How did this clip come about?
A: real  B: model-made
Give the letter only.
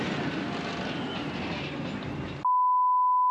A